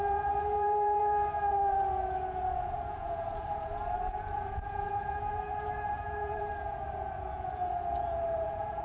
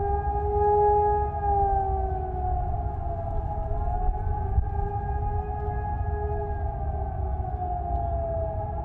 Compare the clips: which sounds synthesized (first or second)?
first